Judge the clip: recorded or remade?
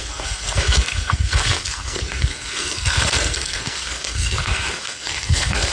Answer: remade